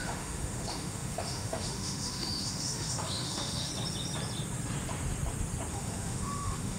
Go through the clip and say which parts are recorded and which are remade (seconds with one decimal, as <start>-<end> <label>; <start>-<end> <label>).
0.0-3.7 remade; 3.7-5.7 recorded; 5.7-6.8 remade

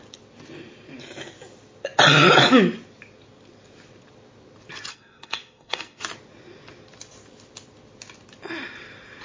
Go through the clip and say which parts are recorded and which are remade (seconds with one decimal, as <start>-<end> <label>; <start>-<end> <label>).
0.0-4.9 recorded; 4.9-6.0 remade; 6.0-9.2 recorded

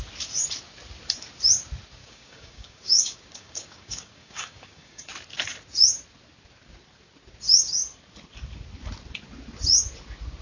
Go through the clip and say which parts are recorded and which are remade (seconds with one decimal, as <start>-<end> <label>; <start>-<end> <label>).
0.0-2.0 recorded; 2.0-5.1 remade; 5.1-10.4 recorded